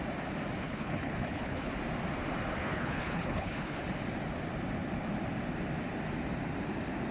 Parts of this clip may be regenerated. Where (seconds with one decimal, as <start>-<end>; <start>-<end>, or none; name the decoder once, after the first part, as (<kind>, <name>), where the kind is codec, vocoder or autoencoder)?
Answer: 0.6-1.7 (codec, HILCodec); 2.6-3.8